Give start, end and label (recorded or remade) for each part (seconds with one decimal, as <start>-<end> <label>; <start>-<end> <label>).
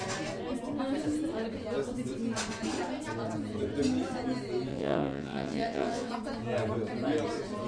0.0-4.7 recorded; 4.7-6.1 remade; 6.1-7.7 recorded